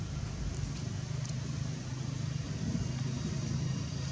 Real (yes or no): yes